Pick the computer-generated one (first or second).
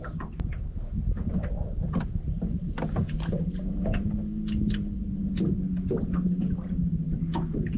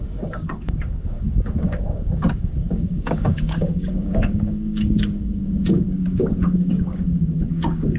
second